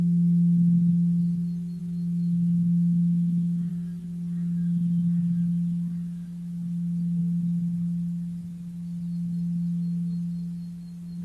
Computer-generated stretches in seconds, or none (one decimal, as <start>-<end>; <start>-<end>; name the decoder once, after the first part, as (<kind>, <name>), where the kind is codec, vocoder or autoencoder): 1.8-3.7 (autoencoder, DAC-VAE)